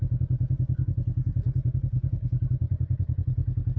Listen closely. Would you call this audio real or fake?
real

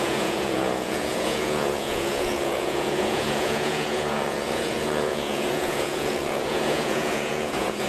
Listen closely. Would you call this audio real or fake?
fake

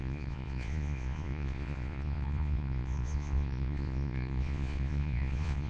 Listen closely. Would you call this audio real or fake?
fake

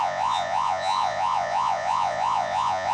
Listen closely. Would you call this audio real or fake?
fake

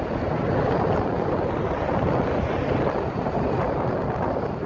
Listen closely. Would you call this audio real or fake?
real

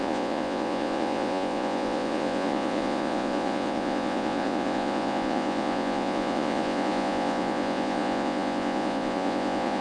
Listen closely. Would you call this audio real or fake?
fake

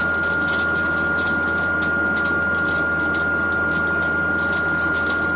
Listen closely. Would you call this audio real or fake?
real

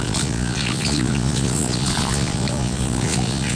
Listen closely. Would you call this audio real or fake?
fake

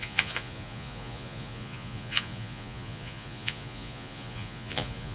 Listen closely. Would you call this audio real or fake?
fake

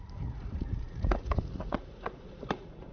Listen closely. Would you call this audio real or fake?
fake